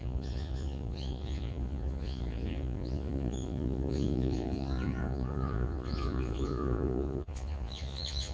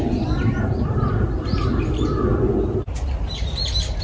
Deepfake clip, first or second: first